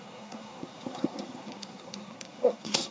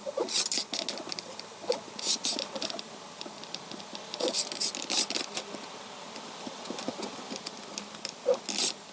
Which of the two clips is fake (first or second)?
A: first